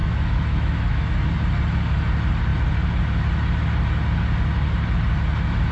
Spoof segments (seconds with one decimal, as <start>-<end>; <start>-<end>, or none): 0.0-1.0